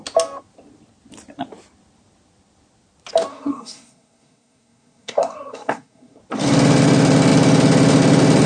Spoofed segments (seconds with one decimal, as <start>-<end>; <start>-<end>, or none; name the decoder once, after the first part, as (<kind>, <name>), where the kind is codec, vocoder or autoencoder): 3.3-6.2 (codec, SNAC)